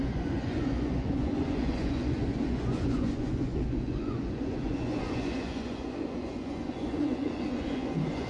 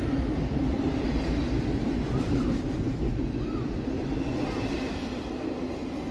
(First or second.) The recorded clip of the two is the second